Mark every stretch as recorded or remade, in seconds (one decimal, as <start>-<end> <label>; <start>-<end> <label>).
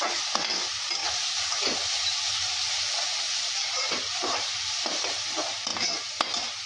0.0-1.0 recorded; 1.0-4.7 remade; 4.7-6.7 recorded